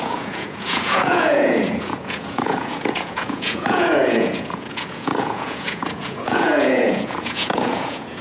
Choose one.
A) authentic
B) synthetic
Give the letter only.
B